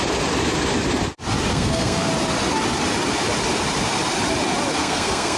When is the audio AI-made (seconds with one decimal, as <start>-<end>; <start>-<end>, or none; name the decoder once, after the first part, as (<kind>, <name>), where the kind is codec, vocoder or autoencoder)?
1.5-2.1 (codec, SNAC); 4.8-5.4